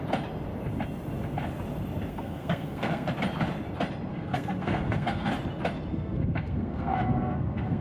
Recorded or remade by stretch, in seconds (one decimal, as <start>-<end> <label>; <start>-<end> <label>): 0.0-2.1 recorded; 2.1-3.1 remade; 3.1-4.1 recorded; 4.1-5.3 remade; 5.3-5.9 recorded; 5.9-7.8 remade